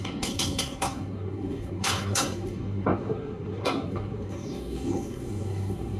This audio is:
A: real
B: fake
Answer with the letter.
B